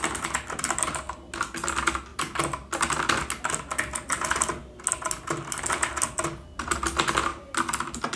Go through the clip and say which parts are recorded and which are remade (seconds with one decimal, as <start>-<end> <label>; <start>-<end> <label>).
0.0-8.2 recorded

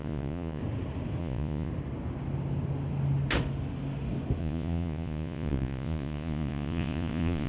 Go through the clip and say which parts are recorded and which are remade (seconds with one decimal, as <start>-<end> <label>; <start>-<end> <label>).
0.0-0.6 remade; 0.6-1.2 recorded; 1.2-1.7 remade; 1.7-4.4 recorded; 4.4-7.5 remade

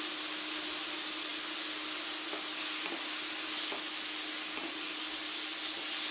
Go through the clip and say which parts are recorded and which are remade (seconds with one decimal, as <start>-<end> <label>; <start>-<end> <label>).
0.0-6.1 recorded